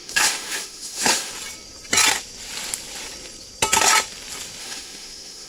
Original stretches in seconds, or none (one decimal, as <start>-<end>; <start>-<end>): 1.3-4.6